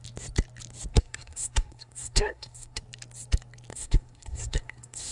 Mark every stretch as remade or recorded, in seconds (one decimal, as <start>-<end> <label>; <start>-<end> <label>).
0.0-0.9 recorded; 0.9-2.8 remade; 2.8-3.7 recorded; 3.7-5.1 remade